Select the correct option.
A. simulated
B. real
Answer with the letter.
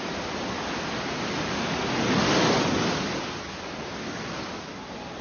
B